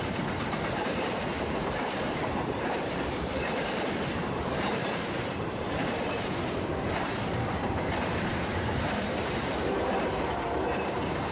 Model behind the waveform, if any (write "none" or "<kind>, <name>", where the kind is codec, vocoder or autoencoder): vocoder, BigVGAN v2